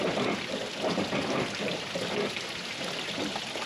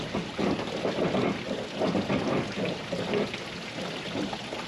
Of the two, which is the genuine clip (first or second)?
second